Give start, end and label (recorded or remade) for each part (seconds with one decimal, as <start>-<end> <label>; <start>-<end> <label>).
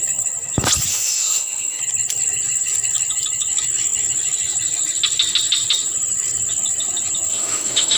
0.0-0.9 recorded; 0.9-1.8 remade; 1.8-7.3 recorded; 7.3-8.0 remade